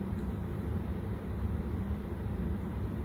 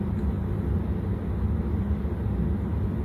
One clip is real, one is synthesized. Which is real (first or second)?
second